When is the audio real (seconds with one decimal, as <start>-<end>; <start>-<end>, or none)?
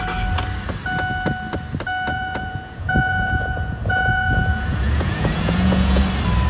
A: 0.0-2.1; 6.0-6.5